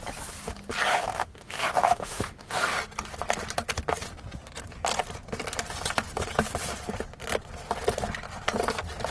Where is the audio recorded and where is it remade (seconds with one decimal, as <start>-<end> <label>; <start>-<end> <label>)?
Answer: 0.0-0.9 recorded; 0.9-2.8 remade; 2.8-9.1 recorded